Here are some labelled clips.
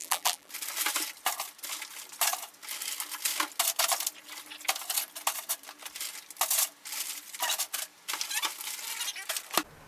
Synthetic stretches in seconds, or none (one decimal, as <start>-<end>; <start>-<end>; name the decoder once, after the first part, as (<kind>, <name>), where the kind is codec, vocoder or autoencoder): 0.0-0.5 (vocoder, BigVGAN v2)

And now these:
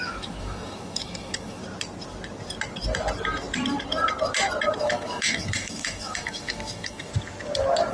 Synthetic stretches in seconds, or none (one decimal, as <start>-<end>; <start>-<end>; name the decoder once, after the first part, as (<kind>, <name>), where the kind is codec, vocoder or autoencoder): 0.0-1.6 (autoencoder, DAC-VAE); 4.8-7.1

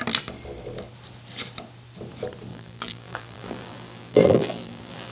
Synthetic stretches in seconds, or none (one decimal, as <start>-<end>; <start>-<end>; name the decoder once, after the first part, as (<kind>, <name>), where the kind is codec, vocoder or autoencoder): 2.5-5.1 (vocoder, BigVGAN v2)

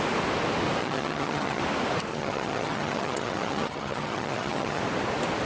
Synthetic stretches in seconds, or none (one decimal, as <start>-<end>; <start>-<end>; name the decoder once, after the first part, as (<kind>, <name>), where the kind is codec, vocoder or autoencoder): 0.8-1.6 (vocoder, HiFi-GAN); 2.1-4.8

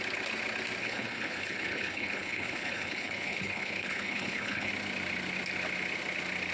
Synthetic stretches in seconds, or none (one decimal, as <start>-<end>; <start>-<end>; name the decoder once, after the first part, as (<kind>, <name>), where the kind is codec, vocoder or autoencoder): 0.8-4.7 (codec, HILCodec)

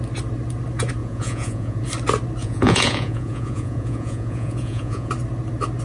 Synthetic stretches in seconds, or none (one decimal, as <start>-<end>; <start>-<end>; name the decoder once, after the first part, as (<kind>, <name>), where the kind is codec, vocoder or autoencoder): 1.0-1.8 (vocoder, Vocos); 2.4-5.1

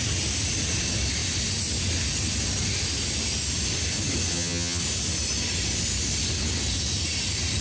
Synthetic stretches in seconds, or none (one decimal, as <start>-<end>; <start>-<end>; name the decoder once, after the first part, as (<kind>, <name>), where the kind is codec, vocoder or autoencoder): 4.3-4.8 (vocoder, HiFi-GAN)